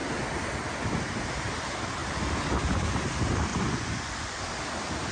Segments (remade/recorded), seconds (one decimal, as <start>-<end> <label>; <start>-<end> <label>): 0.0-3.5 recorded; 3.5-4.4 remade; 4.4-5.1 recorded